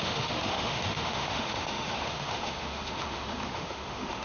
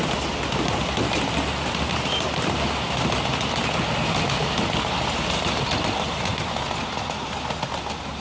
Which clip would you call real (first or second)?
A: second